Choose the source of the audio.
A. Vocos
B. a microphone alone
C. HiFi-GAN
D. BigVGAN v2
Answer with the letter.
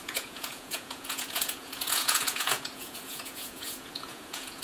A